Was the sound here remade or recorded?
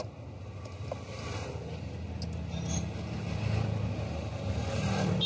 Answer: recorded